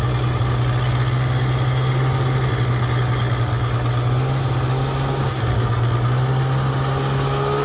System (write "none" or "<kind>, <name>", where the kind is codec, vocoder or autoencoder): none